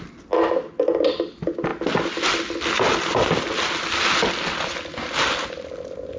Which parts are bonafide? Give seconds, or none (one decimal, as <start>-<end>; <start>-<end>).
0.0-6.2